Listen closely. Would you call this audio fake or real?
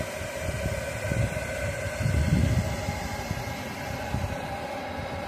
real